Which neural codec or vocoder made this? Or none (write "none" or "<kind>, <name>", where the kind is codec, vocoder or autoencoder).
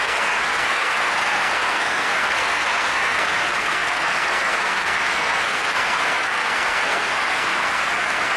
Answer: codec, SNAC